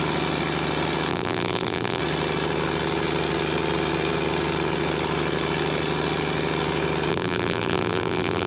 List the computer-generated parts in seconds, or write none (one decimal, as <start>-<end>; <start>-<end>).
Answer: 1.1-2.0; 7.1-8.5